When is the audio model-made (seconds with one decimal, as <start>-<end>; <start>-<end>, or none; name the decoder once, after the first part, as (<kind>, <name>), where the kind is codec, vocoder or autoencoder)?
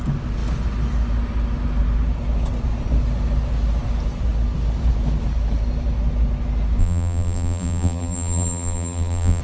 6.8-9.4 (vocoder, BigVGAN v2)